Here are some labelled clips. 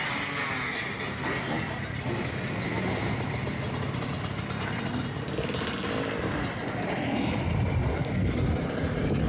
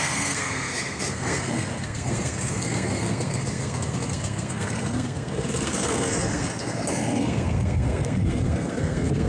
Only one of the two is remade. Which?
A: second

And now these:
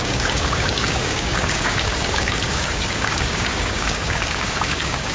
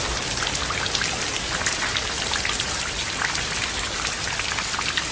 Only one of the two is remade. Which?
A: first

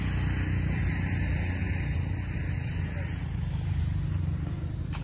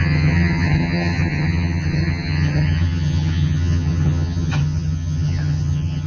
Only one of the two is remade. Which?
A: second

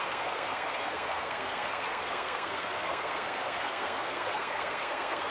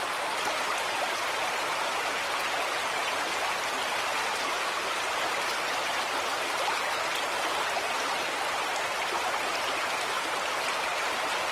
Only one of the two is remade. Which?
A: first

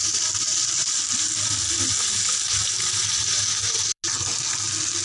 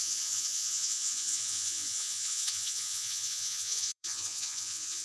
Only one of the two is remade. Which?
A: second